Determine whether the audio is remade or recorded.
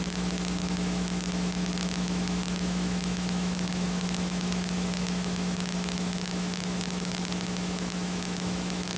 remade